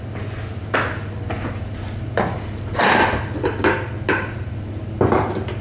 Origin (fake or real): real